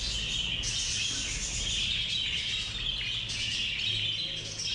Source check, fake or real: real